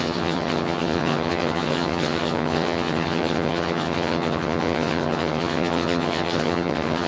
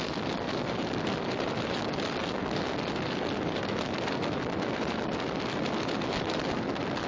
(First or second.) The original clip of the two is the second